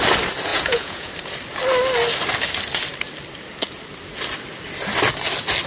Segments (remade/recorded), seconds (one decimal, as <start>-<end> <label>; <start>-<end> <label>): 0.0-0.5 recorded; 0.5-1.1 remade; 1.1-5.7 recorded